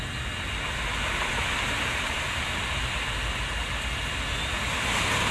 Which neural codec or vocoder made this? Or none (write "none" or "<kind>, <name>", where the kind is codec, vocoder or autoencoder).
none